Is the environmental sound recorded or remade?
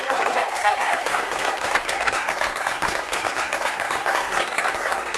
remade